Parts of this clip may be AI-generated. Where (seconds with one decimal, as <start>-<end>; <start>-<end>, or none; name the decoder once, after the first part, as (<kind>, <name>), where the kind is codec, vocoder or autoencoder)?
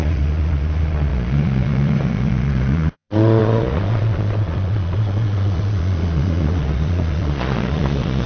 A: 0.0-8.3 (vocoder, Vocos)